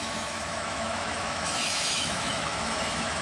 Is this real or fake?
fake